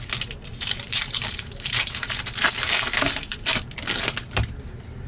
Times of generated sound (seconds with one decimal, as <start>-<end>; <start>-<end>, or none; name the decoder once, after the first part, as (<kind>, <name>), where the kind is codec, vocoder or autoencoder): 0.5-3.6 (vocoder, BigVGAN v2)